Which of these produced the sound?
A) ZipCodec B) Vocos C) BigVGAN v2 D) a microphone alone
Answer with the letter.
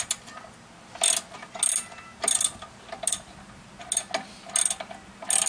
D